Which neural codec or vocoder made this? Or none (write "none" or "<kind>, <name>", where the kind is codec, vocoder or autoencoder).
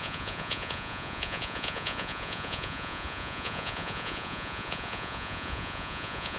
vocoder, Vocos